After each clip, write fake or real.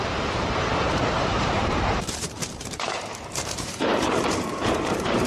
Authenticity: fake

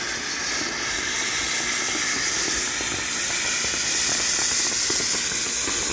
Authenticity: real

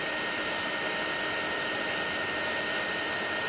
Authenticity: real